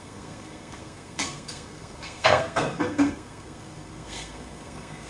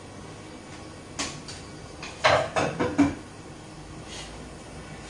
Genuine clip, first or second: second